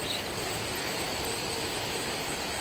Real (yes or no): yes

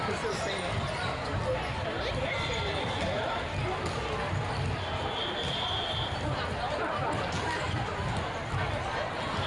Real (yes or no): yes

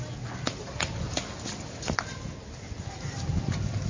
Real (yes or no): yes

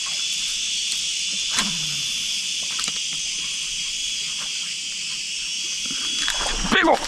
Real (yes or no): yes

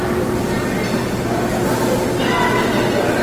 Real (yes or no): yes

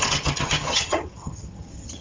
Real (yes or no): no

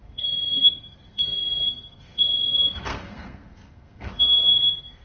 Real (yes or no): no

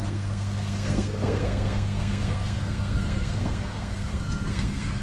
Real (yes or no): no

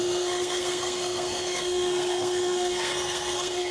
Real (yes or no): no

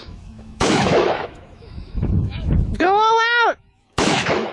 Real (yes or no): no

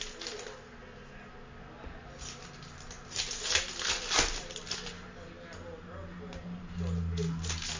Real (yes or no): yes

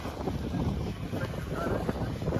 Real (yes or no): yes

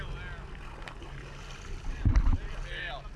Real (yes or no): yes